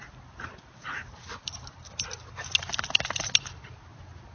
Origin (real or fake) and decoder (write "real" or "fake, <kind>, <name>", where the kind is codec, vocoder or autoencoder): real